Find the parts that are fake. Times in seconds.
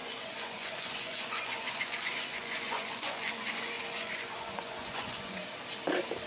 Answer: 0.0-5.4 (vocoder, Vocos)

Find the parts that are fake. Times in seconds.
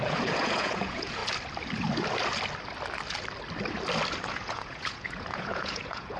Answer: 0.0-1.2 (vocoder, Vocos); 4.3-6.2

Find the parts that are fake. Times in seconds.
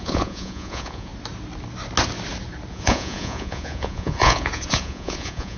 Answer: 0.0-1.1 (vocoder, Vocos); 2.7-5.6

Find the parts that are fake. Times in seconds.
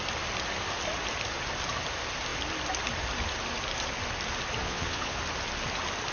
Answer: 4.6-5.2 (vocoder, Vocos)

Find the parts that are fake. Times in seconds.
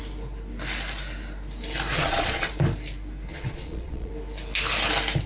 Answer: 1.9-2.5 (vocoder, Vocos); 3.3-4.1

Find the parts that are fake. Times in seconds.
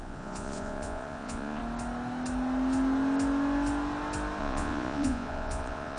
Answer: 0.0-1.6 (vocoder, Vocos); 4.4-6.0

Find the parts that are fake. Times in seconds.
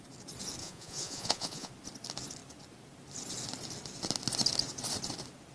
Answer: 0.6-1.7 (vocoder, Vocos)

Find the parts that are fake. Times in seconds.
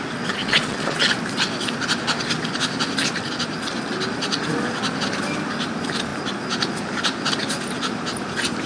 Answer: 0.4-1.0 (vocoder, Vocos)